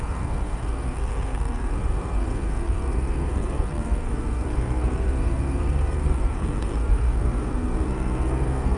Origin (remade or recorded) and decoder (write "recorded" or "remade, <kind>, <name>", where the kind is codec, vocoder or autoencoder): remade, codec, SNAC